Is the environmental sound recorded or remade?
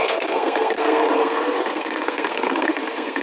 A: remade